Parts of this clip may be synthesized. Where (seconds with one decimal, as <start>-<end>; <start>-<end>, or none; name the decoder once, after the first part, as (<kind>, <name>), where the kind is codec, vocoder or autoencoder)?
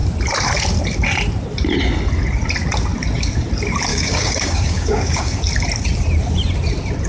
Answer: 3.9-5.4 (codec, DAC)